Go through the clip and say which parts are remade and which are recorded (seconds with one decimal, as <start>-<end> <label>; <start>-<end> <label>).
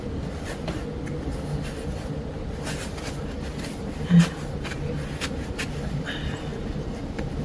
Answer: 0.0-7.4 recorded